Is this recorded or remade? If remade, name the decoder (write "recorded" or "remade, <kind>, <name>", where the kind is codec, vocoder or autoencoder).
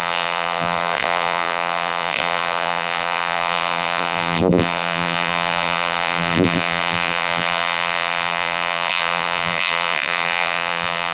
remade, vocoder, BigVGAN v2